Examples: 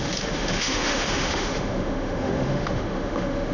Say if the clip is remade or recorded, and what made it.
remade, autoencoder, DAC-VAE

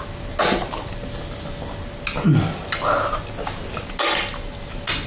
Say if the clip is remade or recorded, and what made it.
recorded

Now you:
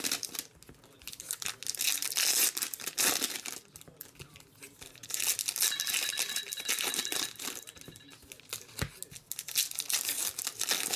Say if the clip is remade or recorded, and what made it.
recorded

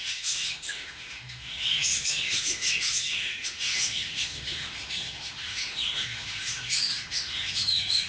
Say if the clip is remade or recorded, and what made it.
remade, autoencoder, DAC-VAE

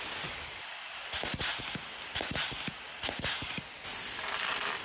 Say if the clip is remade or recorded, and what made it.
recorded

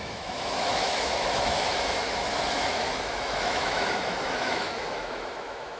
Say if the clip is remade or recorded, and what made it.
remade, autoencoder, DAC-VAE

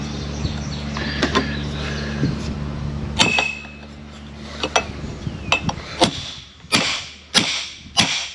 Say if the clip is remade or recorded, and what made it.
recorded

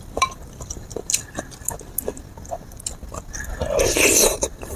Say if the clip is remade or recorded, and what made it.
recorded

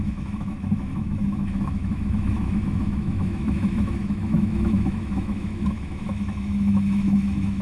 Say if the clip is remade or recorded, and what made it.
remade, autoencoder, DAC-VAE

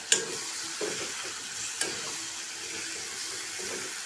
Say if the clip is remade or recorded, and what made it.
recorded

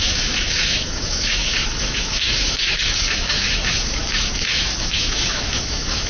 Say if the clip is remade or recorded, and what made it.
remade, autoencoder, DAC-VAE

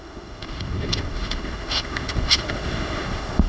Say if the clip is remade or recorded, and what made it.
remade, autoencoder, DAC-VAE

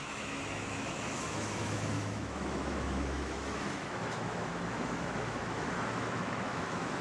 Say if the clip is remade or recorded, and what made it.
remade, autoencoder, DAC-VAE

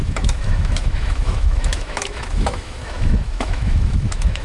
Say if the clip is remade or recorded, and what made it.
remade, autoencoder, DAC-VAE